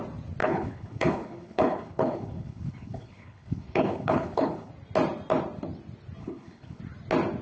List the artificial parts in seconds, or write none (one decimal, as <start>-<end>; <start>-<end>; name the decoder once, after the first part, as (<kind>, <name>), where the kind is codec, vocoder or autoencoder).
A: 0.4-4.7 (codec, HILCodec); 6.2-6.8